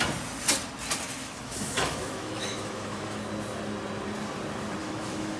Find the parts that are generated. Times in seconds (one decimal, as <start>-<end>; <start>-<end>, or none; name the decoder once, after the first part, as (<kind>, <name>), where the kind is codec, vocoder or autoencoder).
1.2-3.2 (autoencoder, DAC-VAE); 4.8-5.4